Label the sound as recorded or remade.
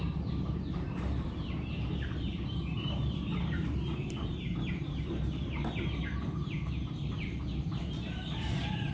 remade